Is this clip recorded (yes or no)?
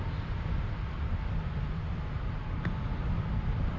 yes